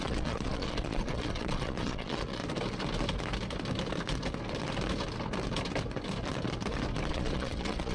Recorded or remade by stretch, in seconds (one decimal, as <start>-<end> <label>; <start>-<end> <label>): 0.0-2.4 remade; 2.4-7.1 recorded; 7.1-7.9 remade